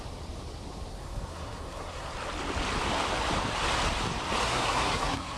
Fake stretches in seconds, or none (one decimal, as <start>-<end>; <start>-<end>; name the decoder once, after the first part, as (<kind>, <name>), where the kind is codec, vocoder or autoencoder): 0.9-2.1 (codec, SNAC); 4.4-5.4